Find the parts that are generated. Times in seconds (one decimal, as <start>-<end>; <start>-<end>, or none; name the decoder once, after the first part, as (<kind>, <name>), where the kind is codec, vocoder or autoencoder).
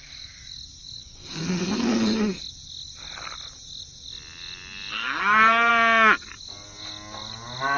1.0-2.4 (codec, SNAC); 4.9-5.7